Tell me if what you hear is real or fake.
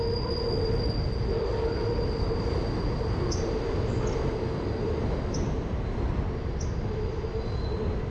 real